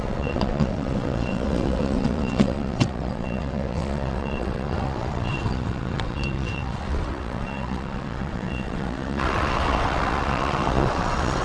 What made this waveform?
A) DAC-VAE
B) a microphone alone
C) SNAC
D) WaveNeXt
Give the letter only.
D